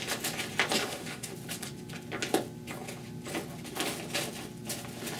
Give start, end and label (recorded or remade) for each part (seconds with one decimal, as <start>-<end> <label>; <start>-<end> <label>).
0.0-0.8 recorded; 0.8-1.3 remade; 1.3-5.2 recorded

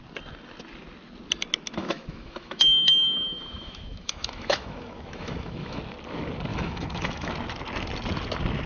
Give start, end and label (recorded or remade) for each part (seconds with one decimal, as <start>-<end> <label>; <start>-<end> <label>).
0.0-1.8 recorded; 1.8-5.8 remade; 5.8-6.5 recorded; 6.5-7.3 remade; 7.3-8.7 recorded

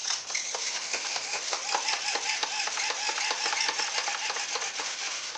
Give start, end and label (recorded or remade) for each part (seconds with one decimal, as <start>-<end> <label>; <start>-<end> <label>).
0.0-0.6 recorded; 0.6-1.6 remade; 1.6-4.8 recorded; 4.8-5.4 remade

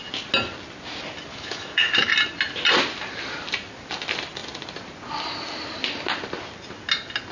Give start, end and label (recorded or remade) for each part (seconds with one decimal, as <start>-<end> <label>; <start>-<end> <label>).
0.0-1.3 recorded; 1.3-2.1 remade; 2.1-7.3 recorded

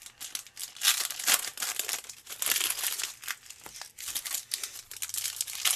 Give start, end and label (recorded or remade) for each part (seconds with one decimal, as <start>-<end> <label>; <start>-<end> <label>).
0.0-5.8 recorded

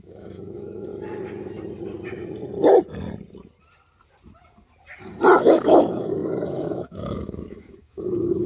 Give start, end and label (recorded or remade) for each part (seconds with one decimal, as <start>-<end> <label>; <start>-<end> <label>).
0.0-0.9 remade; 0.9-5.4 recorded; 5.4-8.5 remade

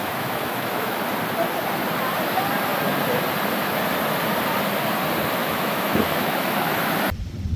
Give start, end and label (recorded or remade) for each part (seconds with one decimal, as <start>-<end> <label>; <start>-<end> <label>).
0.0-1.0 remade; 1.0-5.4 recorded; 5.4-6.9 remade; 6.9-7.6 recorded

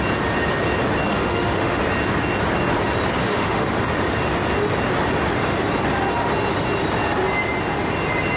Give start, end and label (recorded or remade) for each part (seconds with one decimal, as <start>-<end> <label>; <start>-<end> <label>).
0.0-1.1 recorded; 1.1-1.8 remade; 1.8-3.2 recorded; 3.2-3.7 remade; 3.7-8.4 recorded